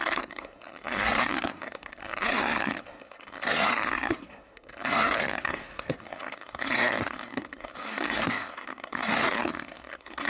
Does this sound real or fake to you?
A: fake